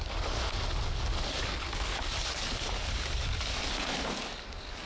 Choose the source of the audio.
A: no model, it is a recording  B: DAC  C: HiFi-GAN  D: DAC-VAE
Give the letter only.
B